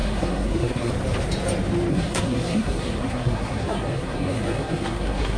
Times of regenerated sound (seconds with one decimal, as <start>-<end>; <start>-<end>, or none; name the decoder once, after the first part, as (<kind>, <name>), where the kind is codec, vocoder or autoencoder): 0.0-0.9 (codec, SNAC); 1.9-5.4